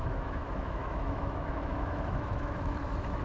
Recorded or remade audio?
remade